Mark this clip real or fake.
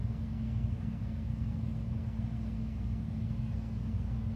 fake